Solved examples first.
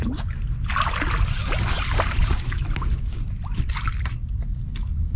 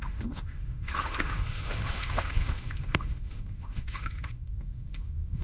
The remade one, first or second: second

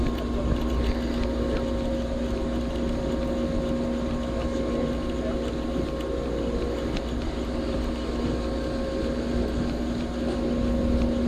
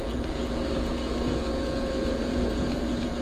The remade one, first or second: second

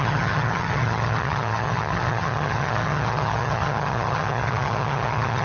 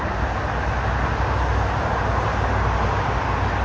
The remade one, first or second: first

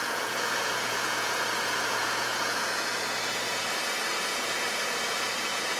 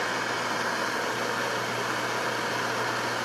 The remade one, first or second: first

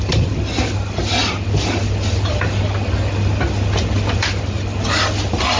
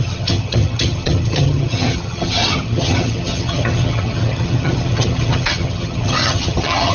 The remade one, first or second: second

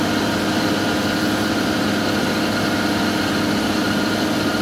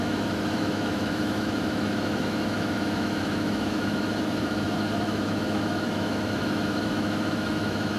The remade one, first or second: second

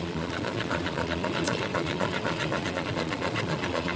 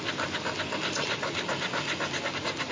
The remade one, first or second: first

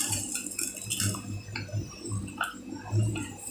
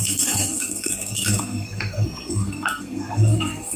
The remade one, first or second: second